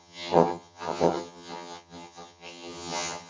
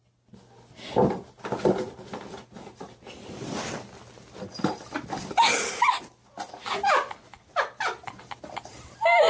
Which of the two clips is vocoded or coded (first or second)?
first